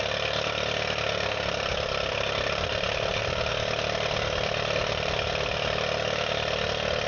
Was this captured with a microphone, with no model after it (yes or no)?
yes